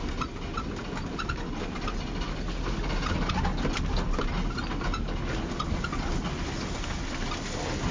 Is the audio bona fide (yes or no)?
yes